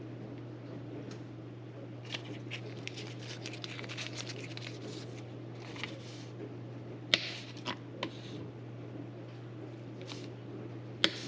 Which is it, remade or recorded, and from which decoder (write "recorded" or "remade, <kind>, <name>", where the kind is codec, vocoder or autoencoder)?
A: recorded